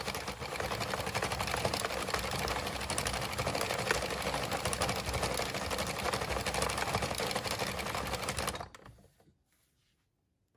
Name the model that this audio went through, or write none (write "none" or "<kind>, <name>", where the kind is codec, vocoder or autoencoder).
none